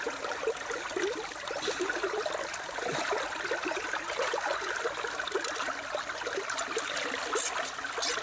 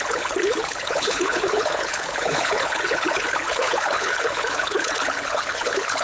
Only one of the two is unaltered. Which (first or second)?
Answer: first